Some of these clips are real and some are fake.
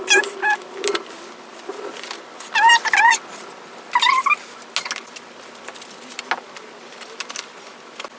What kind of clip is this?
real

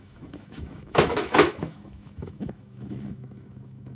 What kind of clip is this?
fake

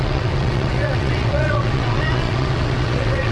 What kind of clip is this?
fake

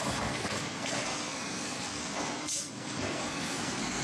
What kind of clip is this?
fake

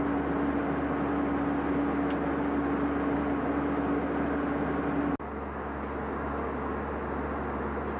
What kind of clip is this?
real